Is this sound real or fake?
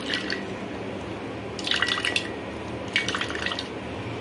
real